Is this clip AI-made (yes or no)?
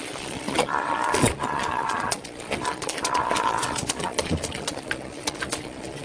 yes